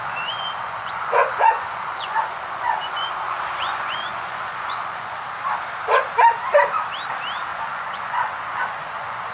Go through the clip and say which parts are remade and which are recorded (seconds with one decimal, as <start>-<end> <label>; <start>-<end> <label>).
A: 0.0-5.2 remade; 5.2-7.5 recorded; 7.5-9.3 remade

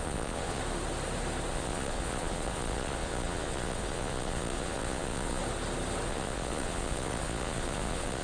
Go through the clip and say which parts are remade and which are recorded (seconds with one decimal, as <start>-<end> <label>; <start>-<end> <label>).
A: 0.0-0.6 remade; 0.6-1.5 recorded; 1.5-5.4 remade; 5.4-6.1 recorded; 6.1-8.2 remade

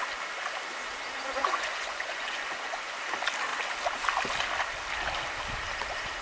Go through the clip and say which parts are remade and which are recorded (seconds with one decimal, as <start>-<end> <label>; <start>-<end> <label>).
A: 0.0-1.4 recorded; 1.4-3.0 remade; 3.0-6.2 recorded

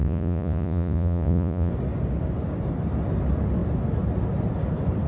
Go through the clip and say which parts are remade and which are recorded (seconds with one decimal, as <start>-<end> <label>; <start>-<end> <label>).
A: 0.0-1.7 remade; 1.7-5.1 recorded